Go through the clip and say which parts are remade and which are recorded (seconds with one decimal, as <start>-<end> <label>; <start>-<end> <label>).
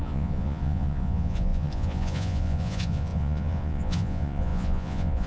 0.0-5.3 remade